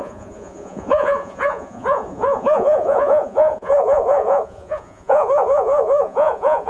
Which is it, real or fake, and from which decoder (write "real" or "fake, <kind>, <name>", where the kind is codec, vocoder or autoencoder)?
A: fake, vocoder, Vocos